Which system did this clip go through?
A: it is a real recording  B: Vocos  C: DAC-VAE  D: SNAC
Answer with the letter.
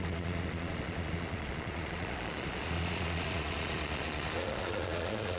B